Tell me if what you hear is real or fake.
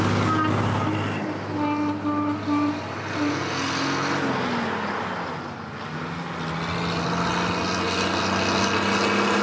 real